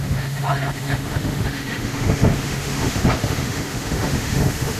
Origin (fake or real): fake